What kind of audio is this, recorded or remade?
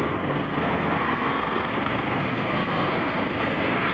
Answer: remade